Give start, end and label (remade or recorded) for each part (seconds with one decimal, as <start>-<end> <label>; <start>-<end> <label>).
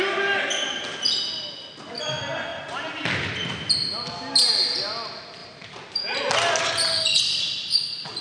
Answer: 0.0-5.4 recorded; 5.4-6.2 remade; 6.2-8.2 recorded